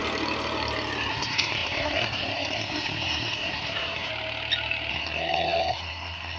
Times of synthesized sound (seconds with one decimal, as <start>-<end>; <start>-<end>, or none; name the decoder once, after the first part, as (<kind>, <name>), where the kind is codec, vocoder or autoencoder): 1.1-4.1 (codec, SNAC); 4.9-6.4